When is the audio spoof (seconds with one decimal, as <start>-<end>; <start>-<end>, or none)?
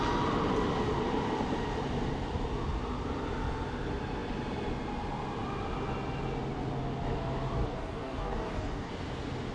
7.6-8.9